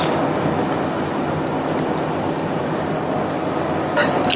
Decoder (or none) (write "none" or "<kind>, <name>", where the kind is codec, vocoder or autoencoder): none